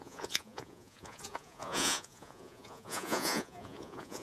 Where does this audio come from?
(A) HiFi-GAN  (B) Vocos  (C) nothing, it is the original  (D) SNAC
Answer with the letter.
B